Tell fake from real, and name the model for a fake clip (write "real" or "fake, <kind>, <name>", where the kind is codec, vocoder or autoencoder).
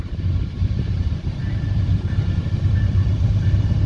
fake, vocoder, BigVGAN v2